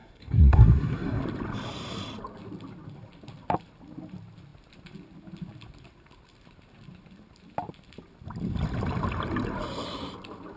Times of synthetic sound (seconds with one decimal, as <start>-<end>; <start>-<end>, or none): 0.0-1.2